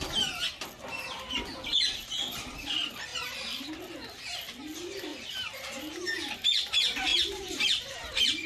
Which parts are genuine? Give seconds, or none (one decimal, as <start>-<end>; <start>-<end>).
0.0-3.1; 3.7-5.1; 5.7-7.1